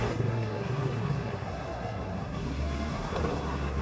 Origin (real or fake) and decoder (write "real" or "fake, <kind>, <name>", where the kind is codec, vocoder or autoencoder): fake, codec, SNAC